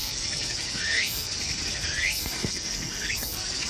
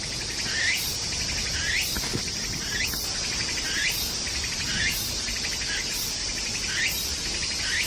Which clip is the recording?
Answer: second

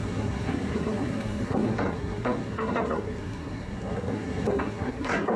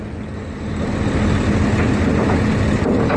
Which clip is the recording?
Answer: second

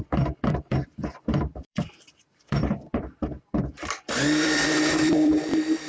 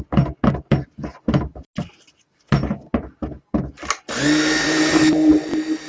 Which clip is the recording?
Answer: second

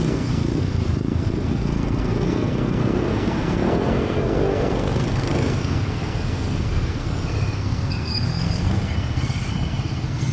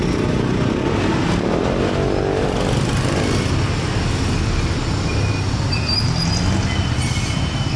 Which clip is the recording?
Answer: second